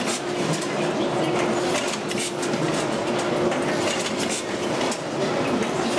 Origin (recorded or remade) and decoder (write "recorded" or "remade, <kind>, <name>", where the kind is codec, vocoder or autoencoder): recorded